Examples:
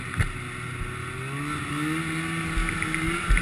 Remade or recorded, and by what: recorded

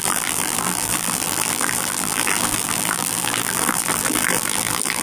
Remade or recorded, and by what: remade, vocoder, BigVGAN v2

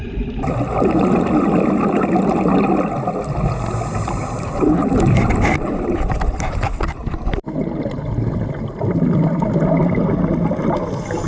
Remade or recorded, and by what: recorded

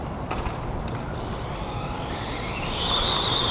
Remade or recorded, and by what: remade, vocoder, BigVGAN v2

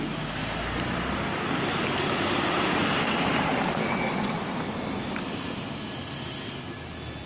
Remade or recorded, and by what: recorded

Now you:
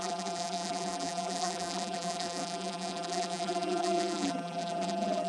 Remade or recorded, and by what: remade, vocoder, BigVGAN v2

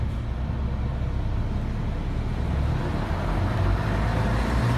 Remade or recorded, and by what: recorded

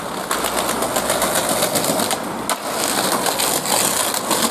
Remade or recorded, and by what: recorded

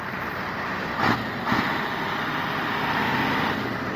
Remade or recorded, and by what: recorded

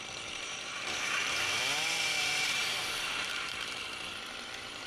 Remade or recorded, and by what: remade, vocoder, BigVGAN v2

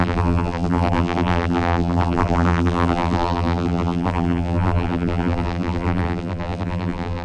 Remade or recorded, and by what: remade, vocoder, BigVGAN v2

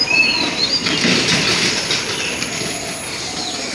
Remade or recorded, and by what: recorded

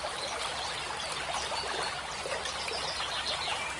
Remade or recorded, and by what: remade, vocoder, BigVGAN v2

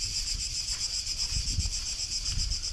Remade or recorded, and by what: recorded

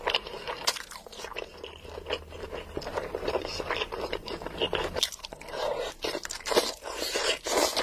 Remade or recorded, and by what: remade, vocoder, BigVGAN v2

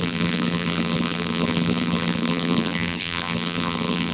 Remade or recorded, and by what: remade, vocoder, BigVGAN v2